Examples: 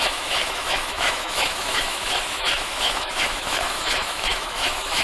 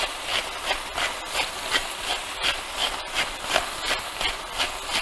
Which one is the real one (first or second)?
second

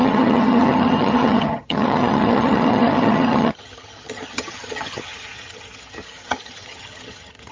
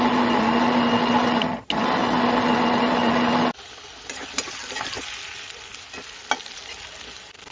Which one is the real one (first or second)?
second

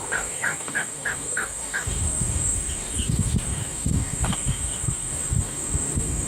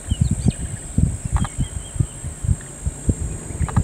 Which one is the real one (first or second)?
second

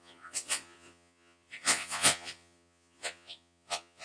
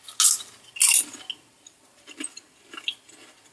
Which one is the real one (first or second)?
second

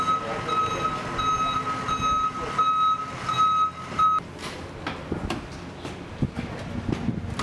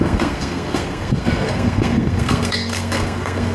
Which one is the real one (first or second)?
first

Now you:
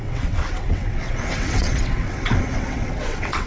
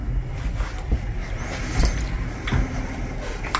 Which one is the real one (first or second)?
second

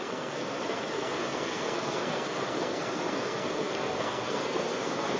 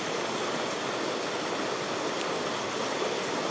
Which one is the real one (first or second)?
second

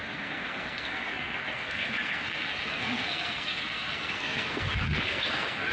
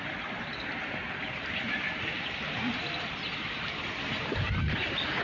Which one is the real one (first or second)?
second